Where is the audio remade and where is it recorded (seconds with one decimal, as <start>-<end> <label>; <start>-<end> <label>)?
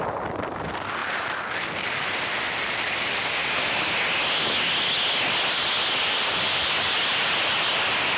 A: 0.0-1.0 remade; 1.0-5.9 recorded; 5.9-8.2 remade